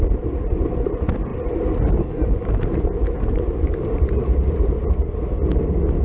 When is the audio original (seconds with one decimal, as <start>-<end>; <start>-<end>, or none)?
0.0-1.3; 4.9-6.0